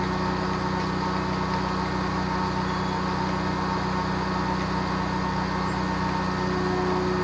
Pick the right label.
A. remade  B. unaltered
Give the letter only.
B